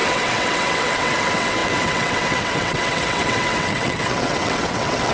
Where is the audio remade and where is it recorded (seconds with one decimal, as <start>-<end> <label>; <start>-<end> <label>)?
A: 0.0-5.1 remade